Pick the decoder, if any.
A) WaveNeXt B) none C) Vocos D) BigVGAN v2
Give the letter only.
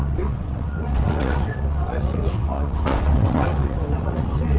A